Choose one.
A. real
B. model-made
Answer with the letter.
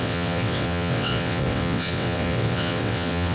B